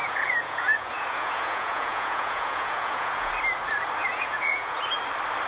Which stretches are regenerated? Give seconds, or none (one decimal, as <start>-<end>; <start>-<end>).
0.0-3.3; 4.1-4.8